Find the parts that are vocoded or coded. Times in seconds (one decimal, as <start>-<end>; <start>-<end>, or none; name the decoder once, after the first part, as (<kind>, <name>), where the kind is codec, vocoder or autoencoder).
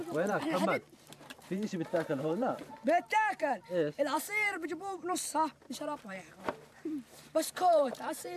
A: 0.0-8.4 (vocoder, BigVGAN v2)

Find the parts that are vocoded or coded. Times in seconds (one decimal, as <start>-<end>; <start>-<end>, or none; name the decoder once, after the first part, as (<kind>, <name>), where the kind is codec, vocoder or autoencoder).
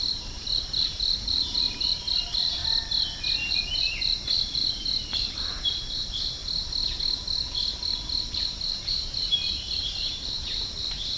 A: 0.0-2.6 (vocoder, BigVGAN v2); 3.5-6.4; 8.3-11.2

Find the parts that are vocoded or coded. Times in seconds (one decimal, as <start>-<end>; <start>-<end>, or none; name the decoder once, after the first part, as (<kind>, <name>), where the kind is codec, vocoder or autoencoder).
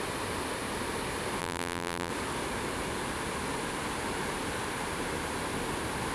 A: 1.4-2.1 (vocoder, BigVGAN v2)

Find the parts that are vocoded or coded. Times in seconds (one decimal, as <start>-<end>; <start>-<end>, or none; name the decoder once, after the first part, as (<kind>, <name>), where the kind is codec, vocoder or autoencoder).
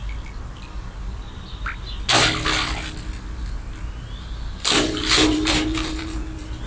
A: 4.3-6.7 (vocoder, BigVGAN v2)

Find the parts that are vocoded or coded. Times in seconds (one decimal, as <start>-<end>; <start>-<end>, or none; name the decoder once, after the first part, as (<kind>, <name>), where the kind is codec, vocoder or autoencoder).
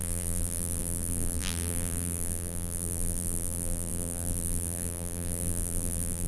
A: 0.0-6.3 (vocoder, BigVGAN v2)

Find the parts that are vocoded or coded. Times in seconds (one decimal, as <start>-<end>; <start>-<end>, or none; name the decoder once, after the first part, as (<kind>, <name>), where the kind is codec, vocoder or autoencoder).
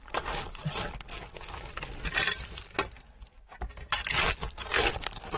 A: 0.0-0.6 (vocoder, BigVGAN v2); 3.8-5.4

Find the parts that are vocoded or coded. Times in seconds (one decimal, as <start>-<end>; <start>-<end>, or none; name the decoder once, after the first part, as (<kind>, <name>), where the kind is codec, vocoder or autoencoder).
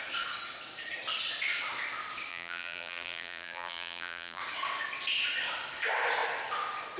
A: 2.3-4.4 (vocoder, BigVGAN v2)